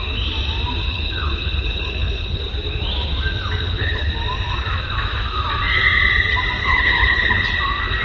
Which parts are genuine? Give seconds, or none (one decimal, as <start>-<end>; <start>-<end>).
0.0-0.8; 2.4-3.6; 4.1-6.6; 7.5-8.0